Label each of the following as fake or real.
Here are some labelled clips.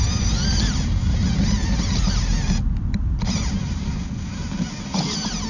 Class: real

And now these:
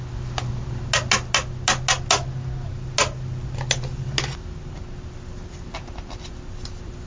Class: real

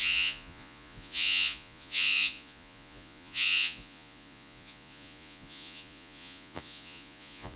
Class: fake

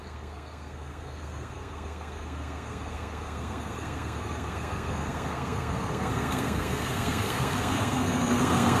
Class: fake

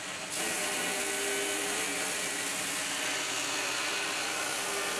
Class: real